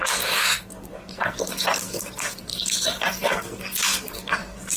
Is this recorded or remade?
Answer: remade